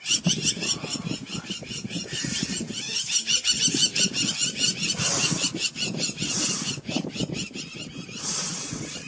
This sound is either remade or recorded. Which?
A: recorded